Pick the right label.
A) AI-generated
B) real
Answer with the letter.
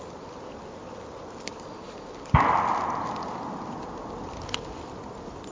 B